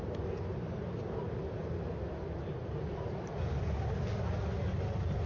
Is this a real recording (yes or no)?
yes